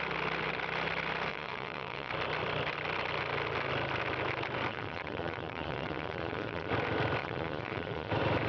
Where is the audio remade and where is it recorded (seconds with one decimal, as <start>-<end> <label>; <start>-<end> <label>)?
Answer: 0.0-1.3 recorded; 1.3-2.1 remade; 2.1-4.7 recorded; 4.7-6.7 remade; 6.7-7.2 recorded; 7.2-8.1 remade; 8.1-8.5 recorded